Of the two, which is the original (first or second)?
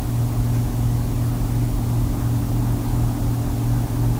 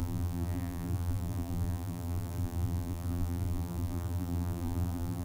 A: first